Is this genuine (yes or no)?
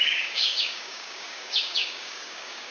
no